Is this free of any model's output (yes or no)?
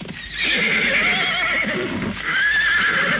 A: yes